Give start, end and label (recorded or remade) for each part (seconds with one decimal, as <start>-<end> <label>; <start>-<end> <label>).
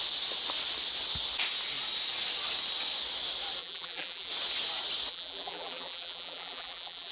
0.0-3.6 recorded; 3.6-4.3 remade; 4.3-5.1 recorded; 5.1-7.1 remade